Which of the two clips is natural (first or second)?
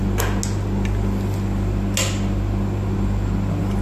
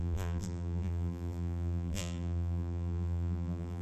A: first